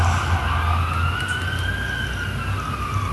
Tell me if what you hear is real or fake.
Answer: real